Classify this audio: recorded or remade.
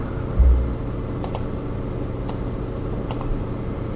recorded